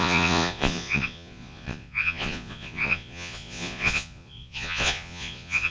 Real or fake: fake